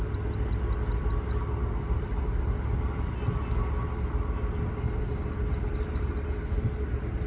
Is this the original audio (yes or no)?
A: yes